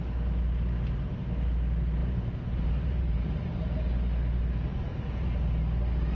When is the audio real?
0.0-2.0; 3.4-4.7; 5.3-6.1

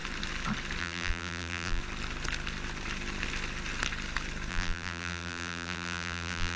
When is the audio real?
0.0-0.8; 1.8-4.5

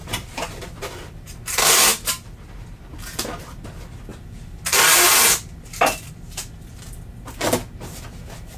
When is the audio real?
0.7-1.9; 2.8-4.1; 6.1-8.6

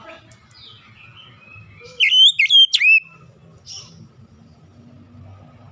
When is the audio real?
0.0-5.7

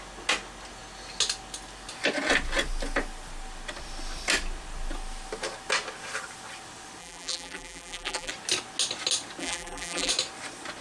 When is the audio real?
0.0-7.0; 8.3-9.4; 10.1-10.8

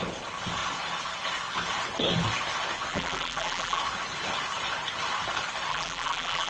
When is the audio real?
0.0-2.9; 3.8-5.7

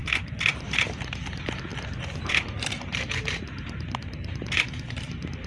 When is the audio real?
none